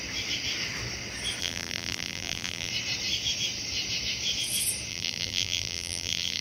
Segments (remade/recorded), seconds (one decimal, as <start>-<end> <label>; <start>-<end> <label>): 0.0-1.4 recorded; 1.4-2.7 remade; 2.7-4.9 recorded; 4.9-6.4 remade